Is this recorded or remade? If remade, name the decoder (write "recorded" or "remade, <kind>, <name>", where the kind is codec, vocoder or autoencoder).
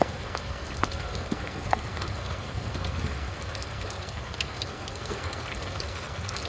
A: remade, codec, SNAC